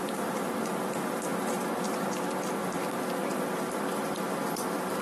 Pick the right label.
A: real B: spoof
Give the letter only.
B